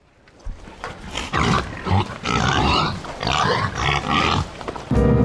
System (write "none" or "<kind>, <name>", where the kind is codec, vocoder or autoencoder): none